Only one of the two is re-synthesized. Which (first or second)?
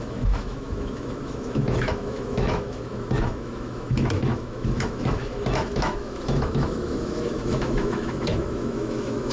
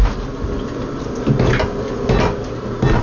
first